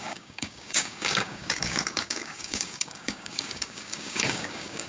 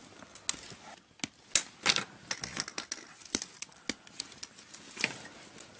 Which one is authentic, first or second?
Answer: second